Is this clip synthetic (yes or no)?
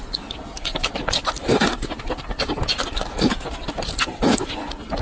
no